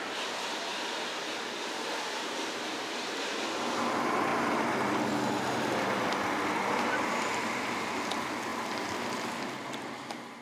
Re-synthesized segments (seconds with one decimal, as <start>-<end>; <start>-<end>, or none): none